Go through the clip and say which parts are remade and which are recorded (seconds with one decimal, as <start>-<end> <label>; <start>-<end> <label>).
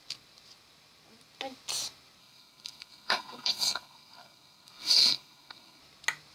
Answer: 0.0-2.2 recorded; 2.2-5.8 remade; 5.8-6.3 recorded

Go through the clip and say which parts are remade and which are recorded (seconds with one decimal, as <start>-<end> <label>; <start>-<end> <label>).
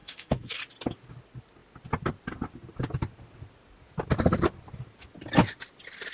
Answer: 0.0-0.6 remade; 0.6-6.1 recorded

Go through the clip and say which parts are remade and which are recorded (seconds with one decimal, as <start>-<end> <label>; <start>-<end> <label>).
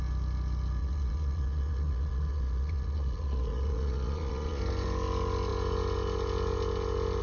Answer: 0.0-0.8 recorded; 0.8-4.6 remade; 4.6-7.2 recorded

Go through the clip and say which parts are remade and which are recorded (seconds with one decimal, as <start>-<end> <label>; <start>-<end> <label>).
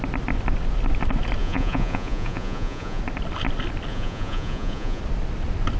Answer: 0.0-1.4 recorded; 1.4-3.0 remade; 3.0-3.9 recorded; 3.9-5.0 remade; 5.0-5.8 recorded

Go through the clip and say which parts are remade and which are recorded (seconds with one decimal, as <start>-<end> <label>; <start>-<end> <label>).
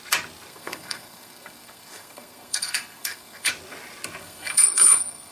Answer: 0.0-0.5 recorded; 0.5-3.5 remade; 3.5-4.2 recorded; 4.2-5.3 remade